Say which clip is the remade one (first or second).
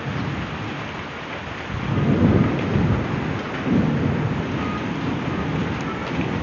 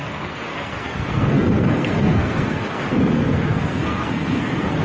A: second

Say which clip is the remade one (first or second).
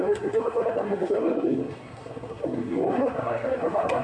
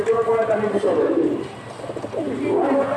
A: first